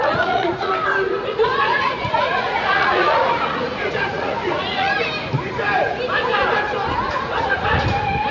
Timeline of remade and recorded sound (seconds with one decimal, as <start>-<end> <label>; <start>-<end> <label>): 0.0-0.7 remade; 0.7-1.3 recorded; 1.3-4.9 remade; 4.9-7.0 recorded; 7.0-7.8 remade; 7.8-8.3 recorded